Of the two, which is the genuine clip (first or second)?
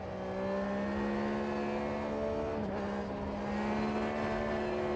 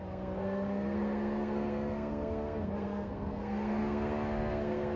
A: first